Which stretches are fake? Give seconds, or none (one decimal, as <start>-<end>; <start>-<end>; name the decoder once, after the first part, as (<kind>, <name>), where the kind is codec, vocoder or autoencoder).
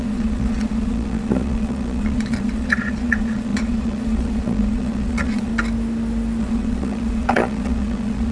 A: 0.0-5.5 (vocoder, Vocos); 6.4-8.3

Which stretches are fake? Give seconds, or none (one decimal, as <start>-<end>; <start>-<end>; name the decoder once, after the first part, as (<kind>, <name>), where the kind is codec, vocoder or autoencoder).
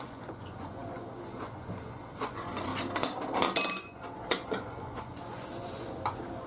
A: 0.0-2.7 (vocoder, Vocos); 3.7-6.5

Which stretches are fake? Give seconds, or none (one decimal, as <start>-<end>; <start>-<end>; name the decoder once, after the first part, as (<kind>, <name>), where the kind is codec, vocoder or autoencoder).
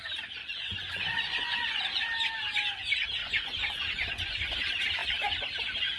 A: 0.4-1.8 (vocoder, Vocos); 3.2-4.6